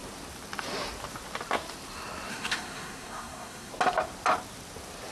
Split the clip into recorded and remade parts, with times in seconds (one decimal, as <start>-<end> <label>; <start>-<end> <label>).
0.0-2.3 recorded; 2.3-3.7 remade; 3.7-5.1 recorded